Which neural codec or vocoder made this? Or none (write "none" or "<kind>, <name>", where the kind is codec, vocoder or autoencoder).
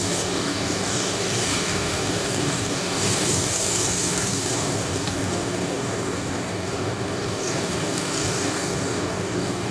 codec, DAC